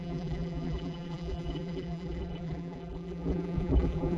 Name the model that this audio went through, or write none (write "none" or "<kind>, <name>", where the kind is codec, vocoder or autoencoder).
vocoder, BigVGAN v2